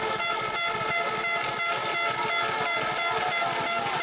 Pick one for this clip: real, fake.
real